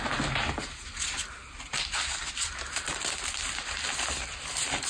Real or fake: real